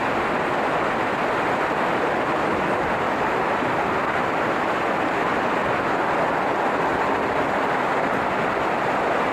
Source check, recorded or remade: recorded